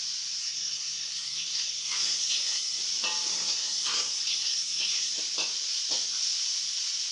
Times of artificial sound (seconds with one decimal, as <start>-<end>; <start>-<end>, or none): 0.4-2.8; 3.3-5.1